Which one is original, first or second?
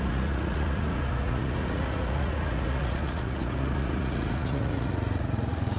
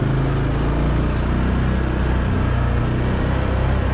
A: second